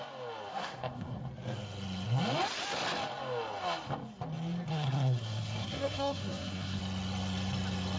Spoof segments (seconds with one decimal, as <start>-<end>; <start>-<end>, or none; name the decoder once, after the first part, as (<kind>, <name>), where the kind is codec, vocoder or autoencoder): 0.5-1.2 (codec, SNAC); 4.7-6.8